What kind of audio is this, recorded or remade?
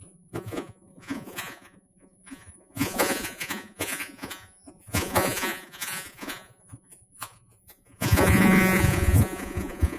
remade